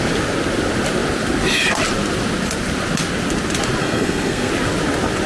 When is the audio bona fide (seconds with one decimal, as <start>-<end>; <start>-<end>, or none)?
0.0-3.8; 4.5-5.3